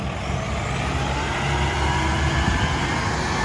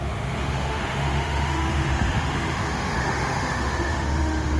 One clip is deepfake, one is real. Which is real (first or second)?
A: first